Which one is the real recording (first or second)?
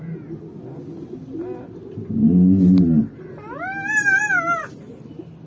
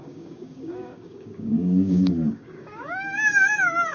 first